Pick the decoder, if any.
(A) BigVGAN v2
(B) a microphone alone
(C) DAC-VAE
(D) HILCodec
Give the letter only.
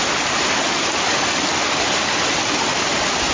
B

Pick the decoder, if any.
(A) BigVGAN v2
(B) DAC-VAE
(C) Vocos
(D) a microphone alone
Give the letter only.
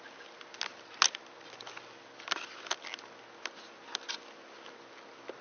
D